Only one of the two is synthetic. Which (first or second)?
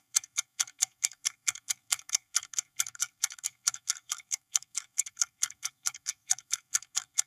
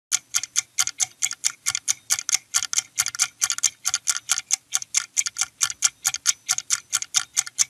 first